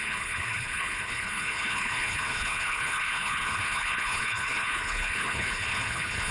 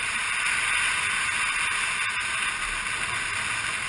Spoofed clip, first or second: first